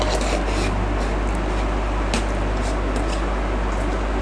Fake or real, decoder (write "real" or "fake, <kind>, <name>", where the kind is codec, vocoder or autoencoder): real